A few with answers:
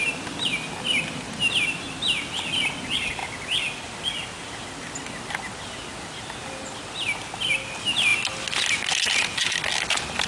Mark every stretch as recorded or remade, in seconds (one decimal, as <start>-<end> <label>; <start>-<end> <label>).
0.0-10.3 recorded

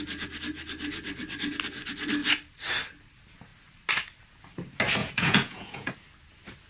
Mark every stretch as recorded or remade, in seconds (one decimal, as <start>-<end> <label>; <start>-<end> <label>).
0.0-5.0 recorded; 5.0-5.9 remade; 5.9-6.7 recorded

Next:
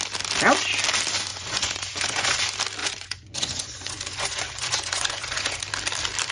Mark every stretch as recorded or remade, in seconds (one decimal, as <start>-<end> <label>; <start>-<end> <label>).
0.0-1.3 recorded; 1.3-2.4 remade; 2.4-2.8 recorded; 2.8-5.6 remade; 5.6-6.3 recorded

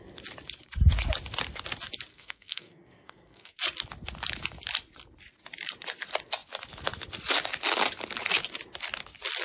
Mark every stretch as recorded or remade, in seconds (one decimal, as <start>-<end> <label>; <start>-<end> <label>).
0.0-2.1 recorded; 2.1-3.6 remade; 3.6-9.4 recorded